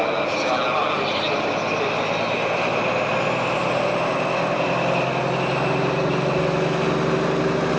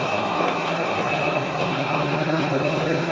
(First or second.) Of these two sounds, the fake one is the second